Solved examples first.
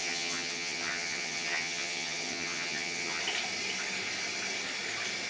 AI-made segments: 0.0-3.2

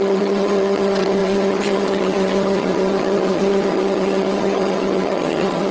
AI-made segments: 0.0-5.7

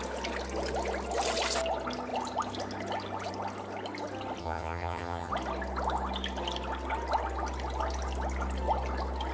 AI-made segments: 4.4-5.3

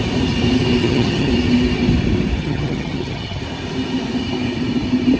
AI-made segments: 0.8-1.3; 2.4-3.4

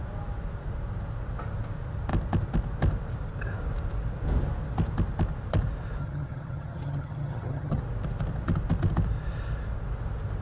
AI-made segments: 6.0-7.8

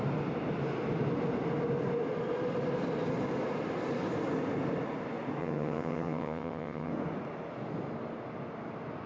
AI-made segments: 5.4-6.9

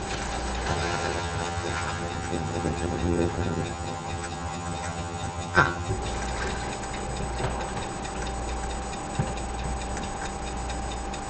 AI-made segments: 0.7-5.9